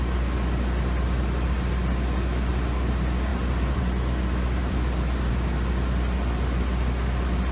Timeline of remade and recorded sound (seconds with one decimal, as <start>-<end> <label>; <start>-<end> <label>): 0.0-3.3 recorded; 3.3-3.8 remade; 3.8-4.6 recorded; 4.6-5.3 remade; 5.3-7.5 recorded